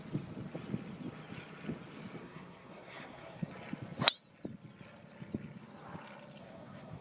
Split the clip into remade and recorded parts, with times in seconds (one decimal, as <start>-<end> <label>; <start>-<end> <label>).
0.0-2.2 recorded; 2.2-3.5 remade; 3.5-6.4 recorded; 6.4-7.0 remade